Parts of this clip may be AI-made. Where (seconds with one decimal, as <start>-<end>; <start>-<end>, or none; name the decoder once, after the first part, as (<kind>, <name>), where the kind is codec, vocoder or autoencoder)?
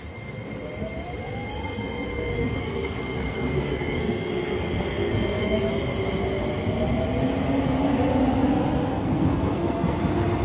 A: 1.2-5.7 (codec, SNAC); 8.9-10.0